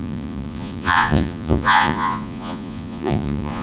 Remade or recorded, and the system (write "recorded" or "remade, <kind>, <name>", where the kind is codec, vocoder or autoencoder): remade, vocoder, Vocos